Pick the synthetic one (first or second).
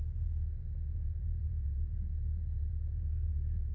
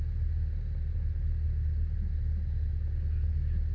first